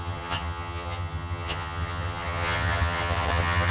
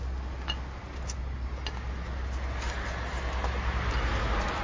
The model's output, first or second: first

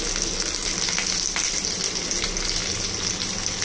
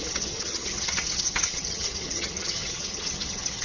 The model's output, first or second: second